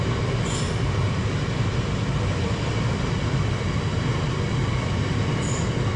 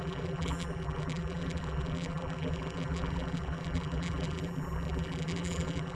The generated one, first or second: second